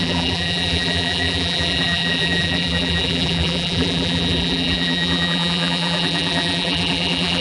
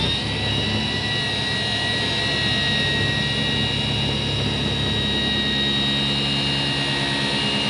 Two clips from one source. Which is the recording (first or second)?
second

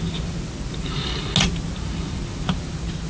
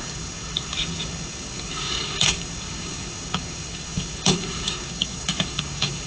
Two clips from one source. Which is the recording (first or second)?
first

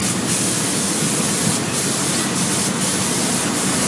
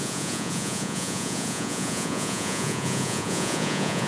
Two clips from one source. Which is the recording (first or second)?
first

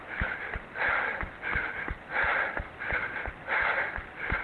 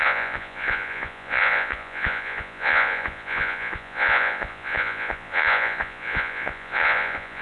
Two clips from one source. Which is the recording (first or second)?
first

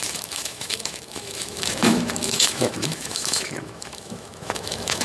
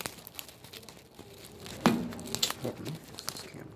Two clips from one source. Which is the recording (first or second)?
second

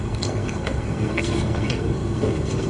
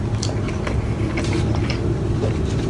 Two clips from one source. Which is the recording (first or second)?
second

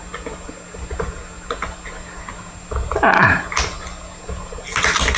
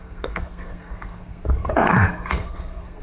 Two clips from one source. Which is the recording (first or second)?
first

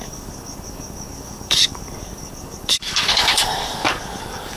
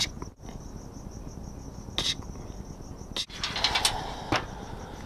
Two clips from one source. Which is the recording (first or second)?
second